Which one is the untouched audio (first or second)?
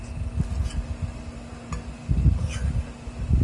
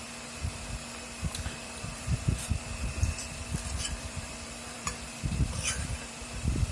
first